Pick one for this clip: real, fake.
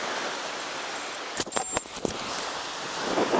real